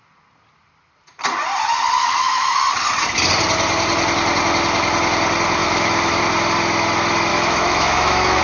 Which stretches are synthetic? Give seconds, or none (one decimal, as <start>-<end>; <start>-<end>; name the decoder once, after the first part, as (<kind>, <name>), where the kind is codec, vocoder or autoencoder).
2.0-2.6 (autoencoder, DAC-VAE); 5.6-6.2; 7.3-8.4